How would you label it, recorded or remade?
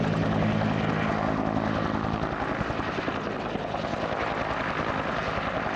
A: recorded